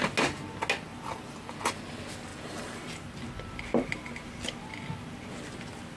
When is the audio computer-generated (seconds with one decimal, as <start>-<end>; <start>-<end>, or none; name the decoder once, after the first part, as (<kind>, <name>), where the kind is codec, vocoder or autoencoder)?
0.9-1.5 (vocoder, BigVGAN v2); 2.3-3.0